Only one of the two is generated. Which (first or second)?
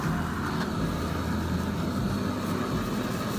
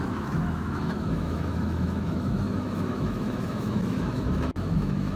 second